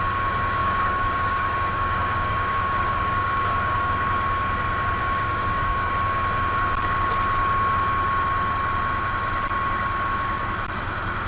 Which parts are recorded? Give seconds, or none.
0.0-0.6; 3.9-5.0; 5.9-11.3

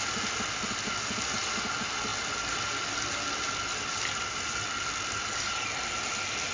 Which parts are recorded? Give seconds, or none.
0.0-6.5

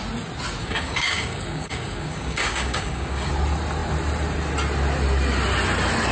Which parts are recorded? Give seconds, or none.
0.0-0.6; 3.3-6.1

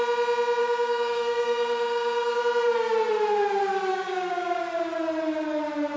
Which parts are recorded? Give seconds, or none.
0.0-0.6; 2.4-3.9; 4.6-6.0

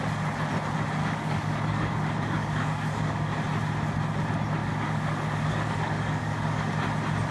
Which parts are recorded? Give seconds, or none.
0.0-1.0; 3.4-4.6; 6.7-7.3

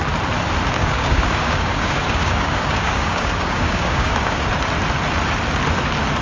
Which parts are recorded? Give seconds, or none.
0.0-0.8; 4.5-6.2